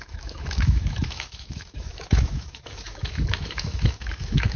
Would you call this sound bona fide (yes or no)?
no